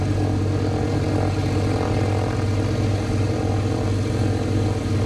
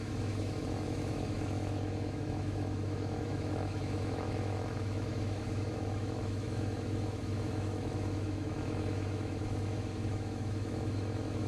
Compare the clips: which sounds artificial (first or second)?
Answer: second